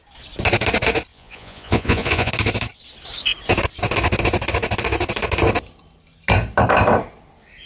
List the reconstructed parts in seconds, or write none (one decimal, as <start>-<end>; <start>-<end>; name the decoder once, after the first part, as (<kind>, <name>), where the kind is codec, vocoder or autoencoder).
1.1-2.3 (vocoder, Vocos)